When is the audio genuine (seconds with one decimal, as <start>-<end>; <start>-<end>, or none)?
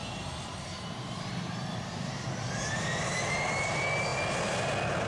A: 2.3-5.1